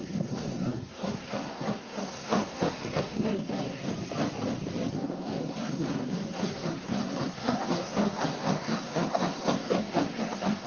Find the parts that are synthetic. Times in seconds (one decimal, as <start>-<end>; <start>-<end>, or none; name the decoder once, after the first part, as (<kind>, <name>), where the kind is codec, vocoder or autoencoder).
0.0-3.8 (codec, SNAC); 4.9-10.7